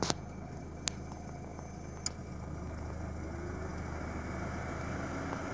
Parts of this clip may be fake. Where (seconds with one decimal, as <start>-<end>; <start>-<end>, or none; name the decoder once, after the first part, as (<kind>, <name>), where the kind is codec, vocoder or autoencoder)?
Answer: none